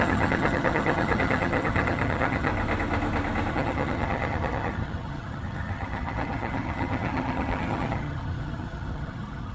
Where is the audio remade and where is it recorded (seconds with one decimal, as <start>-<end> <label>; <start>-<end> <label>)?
0.0-2.5 remade; 2.5-3.5 recorded; 3.5-9.5 remade